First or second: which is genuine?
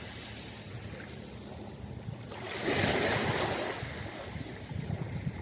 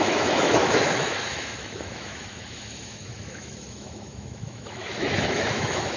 first